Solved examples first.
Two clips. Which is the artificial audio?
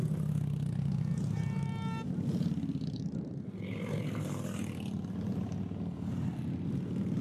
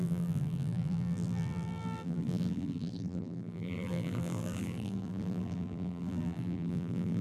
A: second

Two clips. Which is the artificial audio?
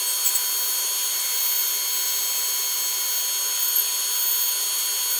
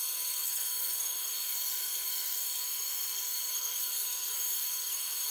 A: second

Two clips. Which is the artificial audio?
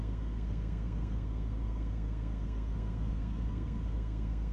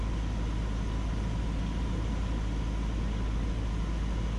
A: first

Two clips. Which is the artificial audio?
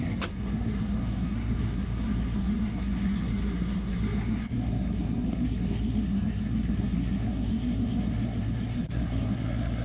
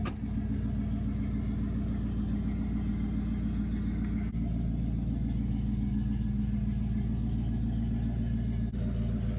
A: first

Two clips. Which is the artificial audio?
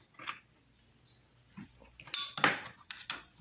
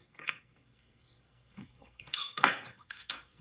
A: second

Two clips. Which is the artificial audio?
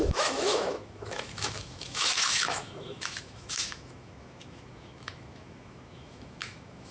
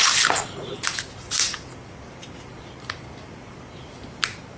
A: first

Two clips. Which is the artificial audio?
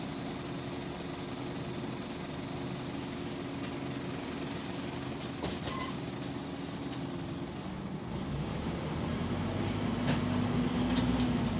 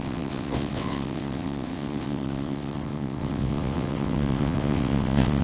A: second